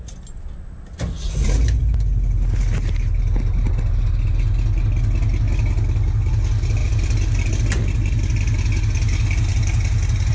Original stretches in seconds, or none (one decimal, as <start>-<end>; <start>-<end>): 0.0-6.8; 7.5-10.3